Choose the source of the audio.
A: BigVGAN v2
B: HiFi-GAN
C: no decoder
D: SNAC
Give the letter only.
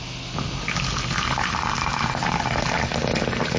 C